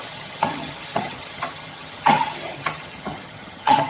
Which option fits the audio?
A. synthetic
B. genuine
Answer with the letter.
A